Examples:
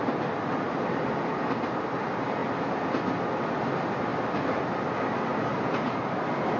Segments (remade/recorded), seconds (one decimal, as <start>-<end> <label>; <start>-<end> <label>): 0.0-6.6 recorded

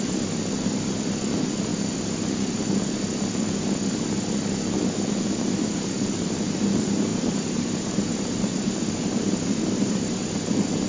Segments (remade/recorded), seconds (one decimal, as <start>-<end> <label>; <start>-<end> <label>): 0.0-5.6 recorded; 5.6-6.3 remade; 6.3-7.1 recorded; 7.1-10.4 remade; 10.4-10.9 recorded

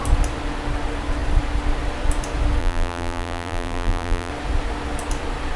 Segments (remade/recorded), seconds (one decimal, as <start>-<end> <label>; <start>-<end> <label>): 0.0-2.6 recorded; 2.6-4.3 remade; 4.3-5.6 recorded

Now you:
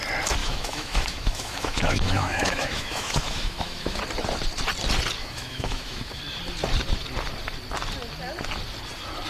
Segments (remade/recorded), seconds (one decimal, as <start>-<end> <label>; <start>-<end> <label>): 0.0-0.4 recorded; 0.4-4.0 remade; 4.0-5.2 recorded; 5.2-6.2 remade; 6.2-9.3 recorded